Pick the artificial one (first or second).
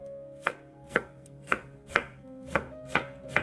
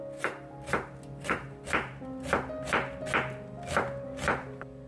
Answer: first